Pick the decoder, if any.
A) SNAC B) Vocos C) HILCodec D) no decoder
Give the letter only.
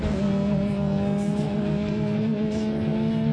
A